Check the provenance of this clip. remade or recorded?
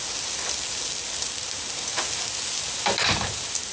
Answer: recorded